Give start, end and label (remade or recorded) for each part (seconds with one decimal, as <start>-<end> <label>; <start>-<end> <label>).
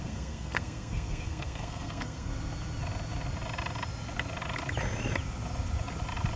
0.0-2.3 remade; 2.3-6.4 recorded